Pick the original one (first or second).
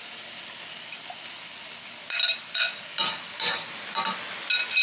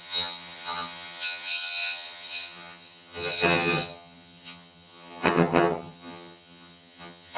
first